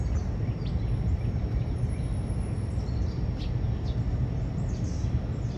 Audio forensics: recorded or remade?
recorded